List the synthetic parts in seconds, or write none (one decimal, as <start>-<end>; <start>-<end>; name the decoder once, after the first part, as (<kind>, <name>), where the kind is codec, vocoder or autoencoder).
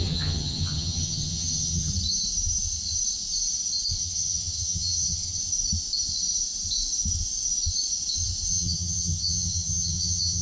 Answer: 0.0-1.9 (vocoder, HiFi-GAN); 4.0-5.4; 8.5-10.4